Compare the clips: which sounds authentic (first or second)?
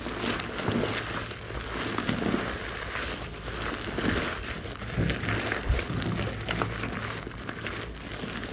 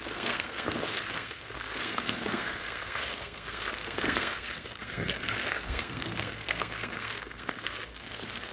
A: first